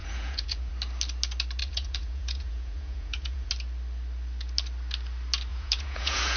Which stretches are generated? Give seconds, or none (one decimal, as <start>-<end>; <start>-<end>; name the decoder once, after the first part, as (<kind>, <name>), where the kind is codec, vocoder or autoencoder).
0.0-0.7 (vocoder, Vocos); 1.6-3.5; 5.5-6.4